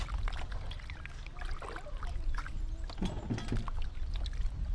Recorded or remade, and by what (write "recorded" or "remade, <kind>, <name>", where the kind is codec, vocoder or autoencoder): recorded